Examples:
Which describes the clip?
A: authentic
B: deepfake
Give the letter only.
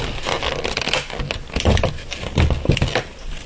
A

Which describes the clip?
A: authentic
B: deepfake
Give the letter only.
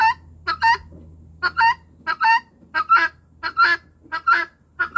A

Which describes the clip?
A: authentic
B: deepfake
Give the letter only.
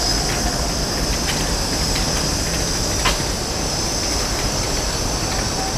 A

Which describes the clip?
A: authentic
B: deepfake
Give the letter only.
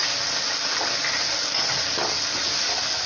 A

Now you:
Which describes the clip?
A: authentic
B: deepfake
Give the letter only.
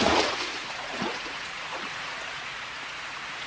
B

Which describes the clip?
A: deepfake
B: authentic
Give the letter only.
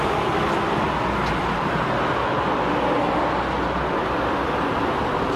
B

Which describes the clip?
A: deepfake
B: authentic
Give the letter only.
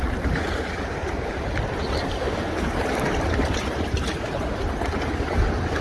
B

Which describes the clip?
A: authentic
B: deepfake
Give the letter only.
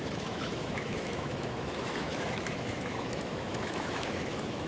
B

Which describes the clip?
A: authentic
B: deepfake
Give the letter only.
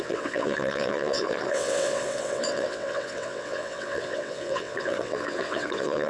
B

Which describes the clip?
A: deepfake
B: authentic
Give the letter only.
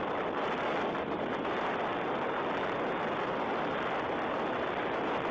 B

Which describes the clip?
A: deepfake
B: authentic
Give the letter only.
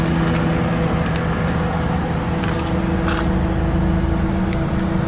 B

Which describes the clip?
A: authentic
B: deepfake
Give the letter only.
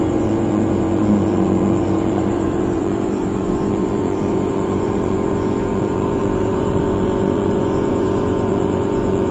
B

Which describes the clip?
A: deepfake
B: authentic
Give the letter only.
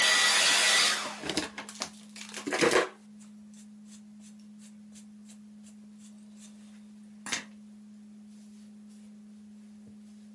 B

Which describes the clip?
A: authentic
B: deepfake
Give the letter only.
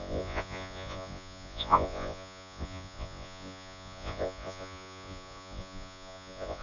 B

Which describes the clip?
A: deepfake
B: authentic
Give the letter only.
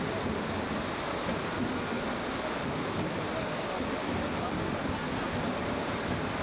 B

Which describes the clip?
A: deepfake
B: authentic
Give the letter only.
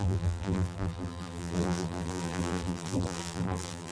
A